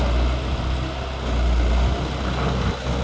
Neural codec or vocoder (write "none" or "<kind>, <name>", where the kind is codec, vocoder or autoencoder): none